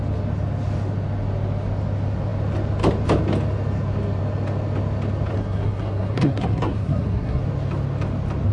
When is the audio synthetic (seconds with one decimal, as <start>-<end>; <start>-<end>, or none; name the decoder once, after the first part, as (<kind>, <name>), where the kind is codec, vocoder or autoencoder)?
5.3-7.4 (codec, SNAC)